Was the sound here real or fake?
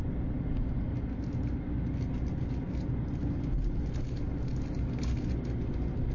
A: real